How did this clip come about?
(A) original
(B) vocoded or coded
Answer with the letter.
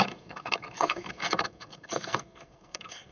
B